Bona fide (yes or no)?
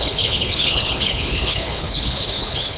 no